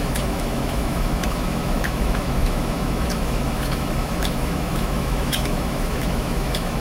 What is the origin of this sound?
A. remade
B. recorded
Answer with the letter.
A